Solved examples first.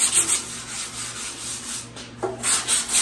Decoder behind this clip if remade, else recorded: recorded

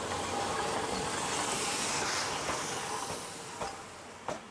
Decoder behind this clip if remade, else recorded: recorded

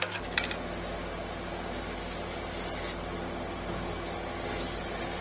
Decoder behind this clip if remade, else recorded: recorded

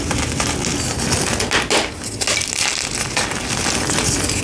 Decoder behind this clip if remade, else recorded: recorded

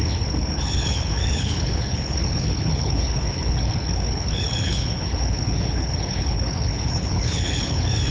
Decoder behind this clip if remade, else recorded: remade, codec, HILCodec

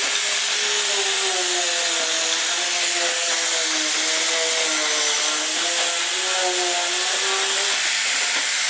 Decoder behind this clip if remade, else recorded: recorded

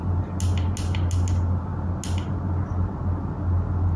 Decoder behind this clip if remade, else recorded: recorded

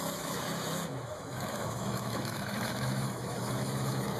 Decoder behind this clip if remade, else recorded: remade, autoencoder, DAC-VAE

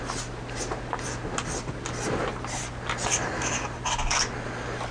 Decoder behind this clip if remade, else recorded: recorded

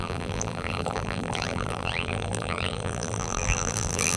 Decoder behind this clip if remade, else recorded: remade, vocoder, BigVGAN v2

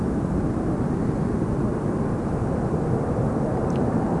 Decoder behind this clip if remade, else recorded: remade, vocoder, BigVGAN v2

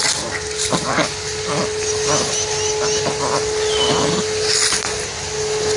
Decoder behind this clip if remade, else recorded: recorded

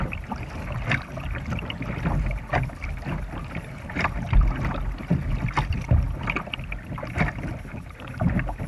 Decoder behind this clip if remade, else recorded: recorded